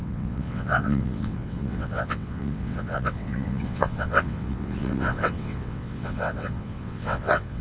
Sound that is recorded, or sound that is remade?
remade